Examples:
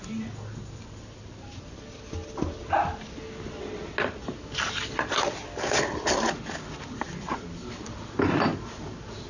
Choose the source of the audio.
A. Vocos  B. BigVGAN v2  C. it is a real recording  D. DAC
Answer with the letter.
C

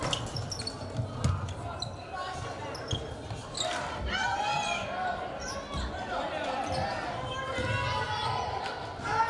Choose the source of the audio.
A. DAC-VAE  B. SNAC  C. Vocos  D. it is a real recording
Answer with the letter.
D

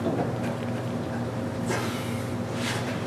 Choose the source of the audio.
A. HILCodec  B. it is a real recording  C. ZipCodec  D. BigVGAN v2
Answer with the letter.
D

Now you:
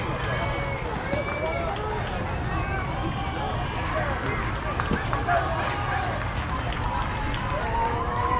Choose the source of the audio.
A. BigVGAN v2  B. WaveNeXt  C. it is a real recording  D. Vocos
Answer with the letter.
C